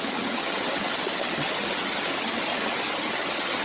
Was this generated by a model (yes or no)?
yes